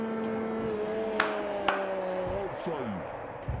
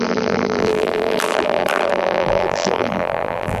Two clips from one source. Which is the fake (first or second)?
second